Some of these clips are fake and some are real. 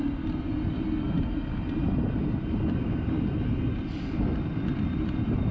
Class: real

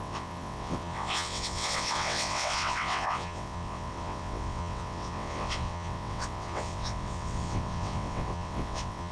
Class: fake